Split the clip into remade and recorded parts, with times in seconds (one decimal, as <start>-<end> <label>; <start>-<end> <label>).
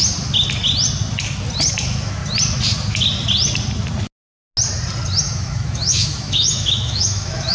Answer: 0.0-1.7 recorded; 1.7-2.2 remade; 2.2-5.2 recorded; 5.2-7.5 remade